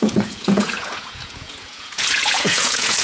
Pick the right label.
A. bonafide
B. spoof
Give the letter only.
B